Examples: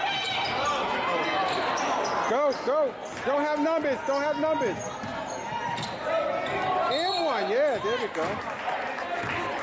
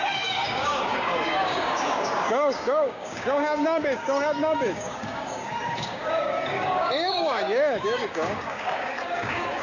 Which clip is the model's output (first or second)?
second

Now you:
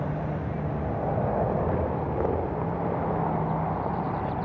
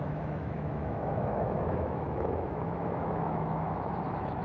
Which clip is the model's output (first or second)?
second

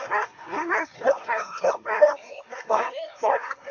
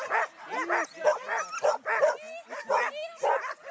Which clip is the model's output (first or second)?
first